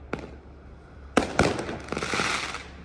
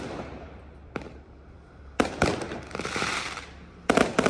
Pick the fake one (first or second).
second